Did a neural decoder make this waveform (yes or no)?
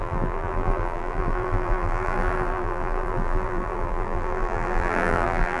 yes